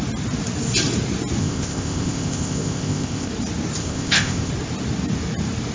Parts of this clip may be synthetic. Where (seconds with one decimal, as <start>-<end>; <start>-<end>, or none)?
1.4-3.3; 3.8-4.5